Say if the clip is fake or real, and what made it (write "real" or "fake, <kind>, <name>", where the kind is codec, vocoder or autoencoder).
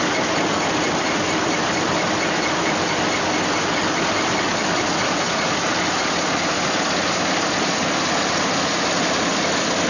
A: real